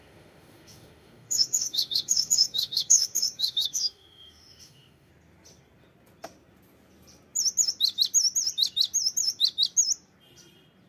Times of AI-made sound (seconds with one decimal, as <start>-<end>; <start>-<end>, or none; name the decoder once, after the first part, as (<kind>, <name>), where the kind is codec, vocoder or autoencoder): 0.0-5.1 (autoencoder, DAC-VAE)